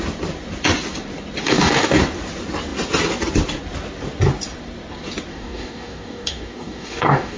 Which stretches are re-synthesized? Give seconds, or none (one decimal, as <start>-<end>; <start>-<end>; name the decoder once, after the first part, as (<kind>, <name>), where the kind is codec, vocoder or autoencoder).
1.4-2.0 (codec, DAC); 5.3-7.4